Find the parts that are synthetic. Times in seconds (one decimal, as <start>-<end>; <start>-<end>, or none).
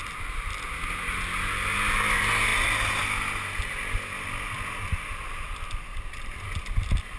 none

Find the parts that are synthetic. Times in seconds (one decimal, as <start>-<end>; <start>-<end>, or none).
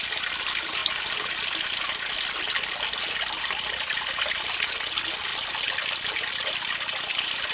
none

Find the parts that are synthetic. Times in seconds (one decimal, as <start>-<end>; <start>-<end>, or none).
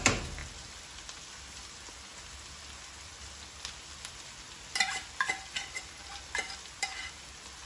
none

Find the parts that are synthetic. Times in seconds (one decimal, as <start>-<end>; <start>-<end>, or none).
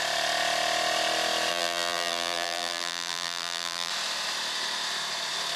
1.5-3.9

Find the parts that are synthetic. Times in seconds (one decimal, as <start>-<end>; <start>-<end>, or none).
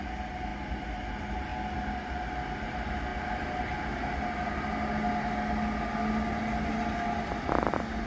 none